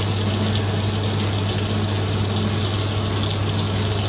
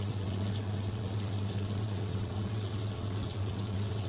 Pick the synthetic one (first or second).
second